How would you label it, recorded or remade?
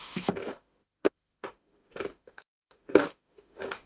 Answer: remade